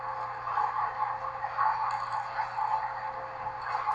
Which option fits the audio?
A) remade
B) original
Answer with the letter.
B